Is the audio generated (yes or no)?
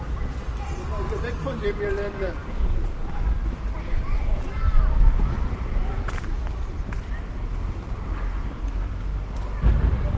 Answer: no